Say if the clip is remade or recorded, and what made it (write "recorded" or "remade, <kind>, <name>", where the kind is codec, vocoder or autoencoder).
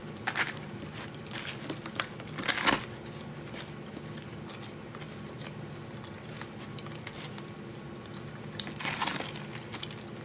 recorded